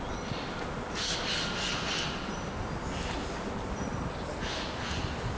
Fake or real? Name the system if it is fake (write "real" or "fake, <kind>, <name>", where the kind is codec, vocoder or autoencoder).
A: real